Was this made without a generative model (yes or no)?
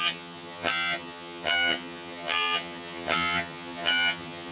no